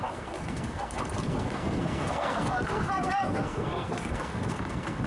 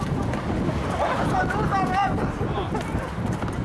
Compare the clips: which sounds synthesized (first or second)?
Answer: first